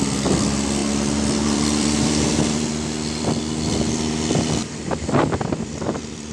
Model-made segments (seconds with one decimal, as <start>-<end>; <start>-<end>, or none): 0.0-6.3